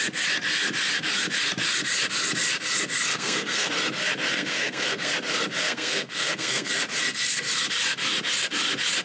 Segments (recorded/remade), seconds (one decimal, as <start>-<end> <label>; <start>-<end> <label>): 0.0-3.1 recorded; 3.1-3.7 remade; 3.7-4.3 recorded; 4.3-5.1 remade; 5.1-5.6 recorded; 5.6-6.7 remade; 6.7-9.0 recorded